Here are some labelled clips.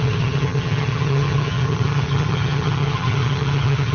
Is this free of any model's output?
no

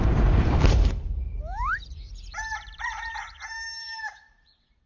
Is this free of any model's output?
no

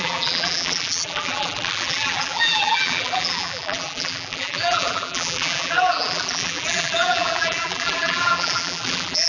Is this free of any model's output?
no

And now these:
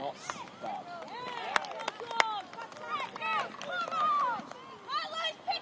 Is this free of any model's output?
yes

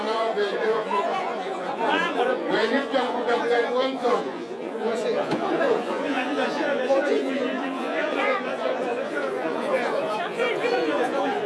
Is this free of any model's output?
no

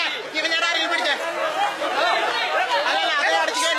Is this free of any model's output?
yes